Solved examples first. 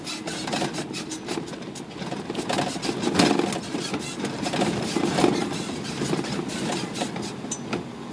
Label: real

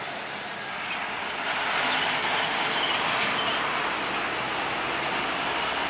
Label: real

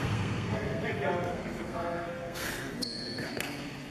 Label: fake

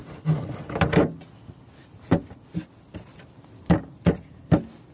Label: real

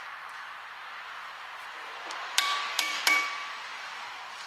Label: fake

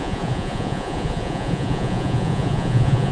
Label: fake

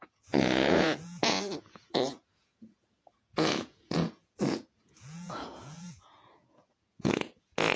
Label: fake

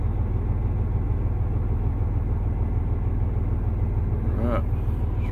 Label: real